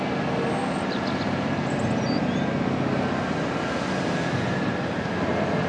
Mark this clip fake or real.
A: real